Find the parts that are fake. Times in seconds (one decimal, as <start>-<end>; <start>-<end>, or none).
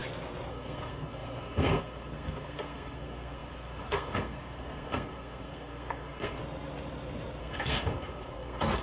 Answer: 0.5-6.4; 7.4-8.8